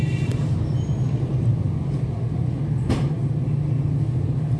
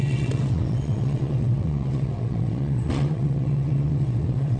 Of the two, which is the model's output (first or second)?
second